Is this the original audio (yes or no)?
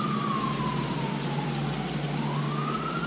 yes